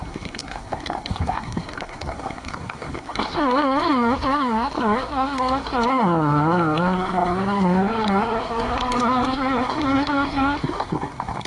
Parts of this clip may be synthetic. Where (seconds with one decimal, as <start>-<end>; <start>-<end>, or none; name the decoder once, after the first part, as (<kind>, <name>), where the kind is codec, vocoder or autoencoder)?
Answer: 0.0-11.5 (codec, SNAC)